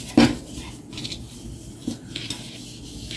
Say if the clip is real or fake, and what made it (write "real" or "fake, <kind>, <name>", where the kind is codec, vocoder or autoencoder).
real